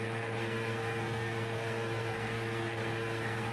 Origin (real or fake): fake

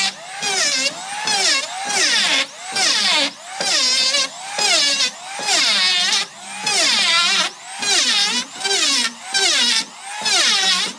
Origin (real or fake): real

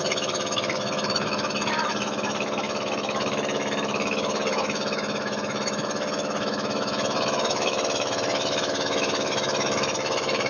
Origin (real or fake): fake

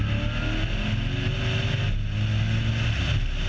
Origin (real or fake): real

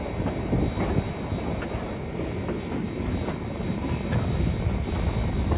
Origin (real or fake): real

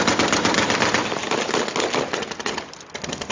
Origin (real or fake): real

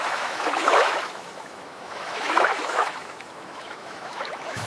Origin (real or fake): fake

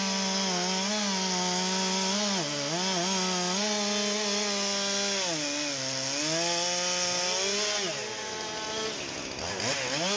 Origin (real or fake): real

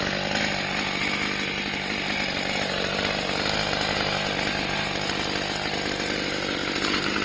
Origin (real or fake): real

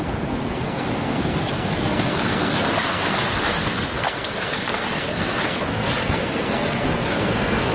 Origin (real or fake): fake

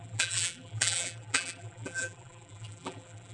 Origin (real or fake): fake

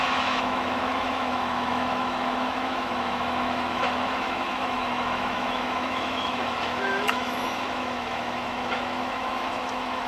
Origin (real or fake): fake